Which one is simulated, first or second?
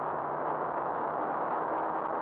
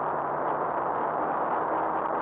first